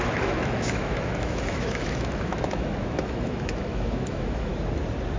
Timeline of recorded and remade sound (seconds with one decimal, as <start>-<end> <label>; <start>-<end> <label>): 0.0-4.5 remade; 4.5-5.2 recorded